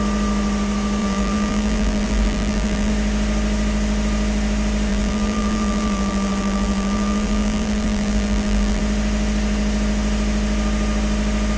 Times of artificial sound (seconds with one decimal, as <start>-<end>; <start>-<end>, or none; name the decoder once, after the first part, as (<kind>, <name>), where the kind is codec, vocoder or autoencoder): 1.0-2.9 (vocoder, BigVGAN v2); 4.9-8.8